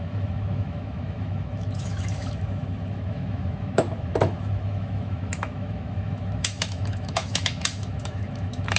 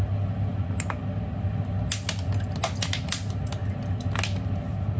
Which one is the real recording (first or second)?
second